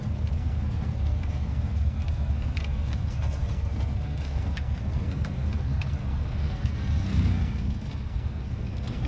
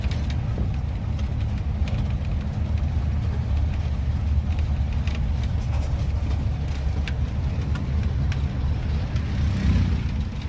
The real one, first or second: second